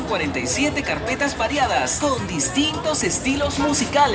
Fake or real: real